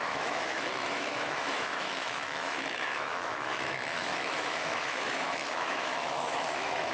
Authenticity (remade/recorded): remade